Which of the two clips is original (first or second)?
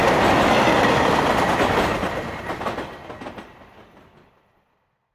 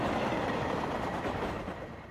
first